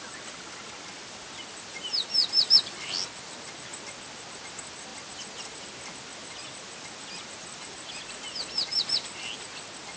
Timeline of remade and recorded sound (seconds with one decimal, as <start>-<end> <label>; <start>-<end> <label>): 0.0-2.2 recorded; 2.2-2.9 remade; 2.9-4.9 recorded; 4.9-5.6 remade; 5.6-10.0 recorded